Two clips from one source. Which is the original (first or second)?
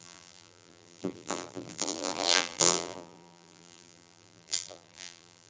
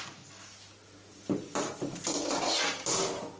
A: second